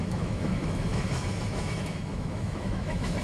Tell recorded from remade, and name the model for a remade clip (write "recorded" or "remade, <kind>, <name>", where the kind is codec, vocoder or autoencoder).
remade, autoencoder, DAC-VAE